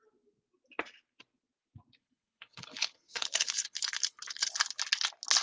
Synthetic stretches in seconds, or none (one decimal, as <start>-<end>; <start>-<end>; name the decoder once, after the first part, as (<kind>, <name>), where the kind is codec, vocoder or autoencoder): 2.0-4.5 (codec, HILCodec)